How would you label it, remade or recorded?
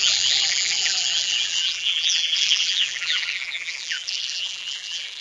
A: remade